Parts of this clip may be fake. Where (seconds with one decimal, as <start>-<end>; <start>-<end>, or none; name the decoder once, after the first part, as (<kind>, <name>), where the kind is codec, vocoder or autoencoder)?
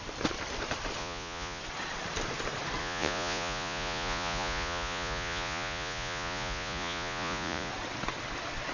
1.0-1.6 (vocoder, Vocos); 2.8-7.7